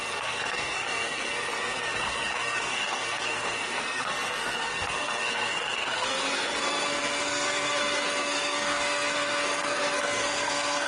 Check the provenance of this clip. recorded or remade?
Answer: remade